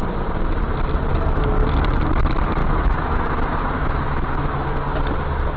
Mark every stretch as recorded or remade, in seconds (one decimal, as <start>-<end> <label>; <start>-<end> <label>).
0.0-2.6 recorded; 2.6-3.3 remade; 3.3-3.8 recorded; 3.8-4.7 remade; 4.7-5.6 recorded